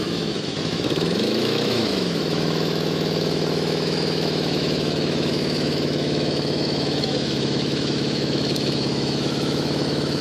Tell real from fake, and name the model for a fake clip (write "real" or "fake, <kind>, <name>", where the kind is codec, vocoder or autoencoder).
fake, autoencoder, DAC-VAE